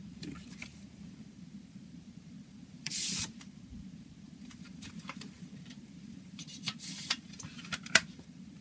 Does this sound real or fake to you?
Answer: fake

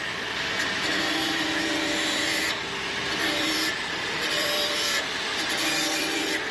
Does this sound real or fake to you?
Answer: fake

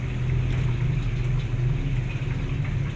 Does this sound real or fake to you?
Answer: real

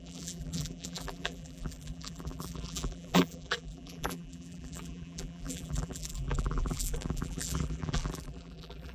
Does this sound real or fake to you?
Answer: fake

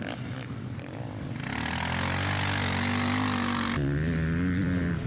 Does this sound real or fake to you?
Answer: real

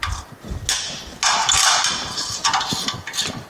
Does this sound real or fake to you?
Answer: real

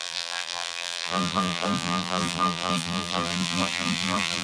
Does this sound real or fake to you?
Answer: fake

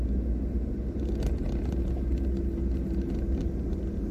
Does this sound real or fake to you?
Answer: real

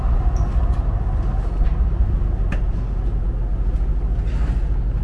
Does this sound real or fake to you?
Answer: real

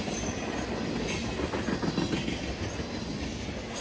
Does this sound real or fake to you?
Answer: real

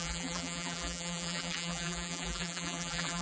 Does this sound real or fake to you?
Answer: fake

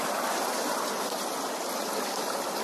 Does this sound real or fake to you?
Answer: real